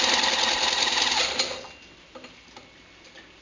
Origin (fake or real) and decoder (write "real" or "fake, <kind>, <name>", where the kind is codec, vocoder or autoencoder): real